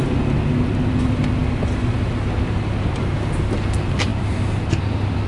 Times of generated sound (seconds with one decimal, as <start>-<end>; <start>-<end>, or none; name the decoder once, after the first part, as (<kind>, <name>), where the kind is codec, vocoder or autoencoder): none